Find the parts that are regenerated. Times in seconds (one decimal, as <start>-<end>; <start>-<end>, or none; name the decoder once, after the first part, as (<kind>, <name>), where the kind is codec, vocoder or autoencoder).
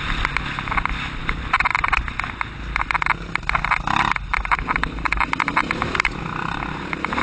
none